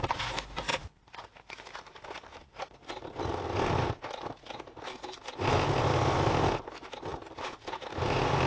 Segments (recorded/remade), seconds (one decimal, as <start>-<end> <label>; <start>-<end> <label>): 0.0-8.5 recorded